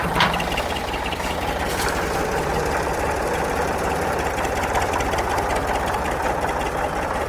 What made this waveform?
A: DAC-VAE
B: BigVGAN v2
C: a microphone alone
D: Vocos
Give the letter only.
B